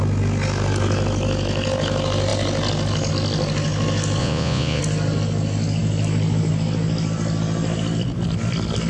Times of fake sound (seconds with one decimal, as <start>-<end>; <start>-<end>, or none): 4.2-4.8